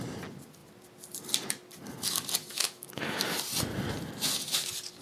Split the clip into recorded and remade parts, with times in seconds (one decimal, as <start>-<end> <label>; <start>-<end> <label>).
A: 0.0-2.5 recorded; 2.5-3.2 remade; 3.2-5.0 recorded